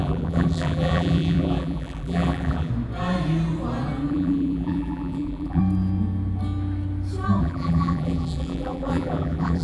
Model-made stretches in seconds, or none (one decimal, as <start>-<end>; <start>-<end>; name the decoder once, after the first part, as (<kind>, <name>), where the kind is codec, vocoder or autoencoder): 0.0-2.7 (vocoder, BigVGAN v2); 4.1-5.6; 7.4-9.6